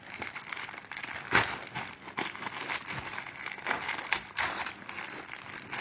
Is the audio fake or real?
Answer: real